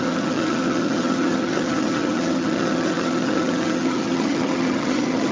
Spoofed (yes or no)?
yes